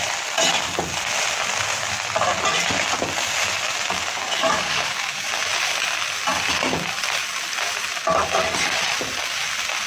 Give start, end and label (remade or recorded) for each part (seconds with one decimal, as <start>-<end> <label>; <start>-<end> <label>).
0.0-4.4 recorded; 4.4-5.3 remade; 5.3-9.9 recorded